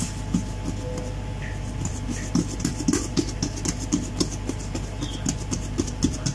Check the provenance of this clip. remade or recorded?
recorded